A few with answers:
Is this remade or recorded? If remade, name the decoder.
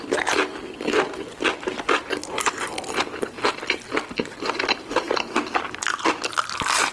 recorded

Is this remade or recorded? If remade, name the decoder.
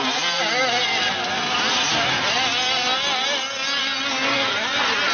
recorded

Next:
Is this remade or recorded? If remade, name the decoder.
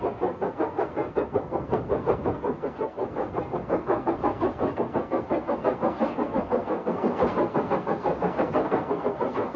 remade, codec, SNAC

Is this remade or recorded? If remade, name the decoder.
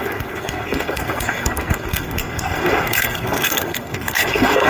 remade, codec, SNAC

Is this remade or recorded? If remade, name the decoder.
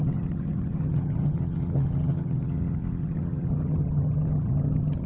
remade, vocoder, HiFi-GAN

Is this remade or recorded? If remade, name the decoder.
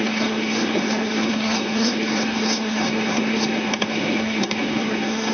remade, codec, SNAC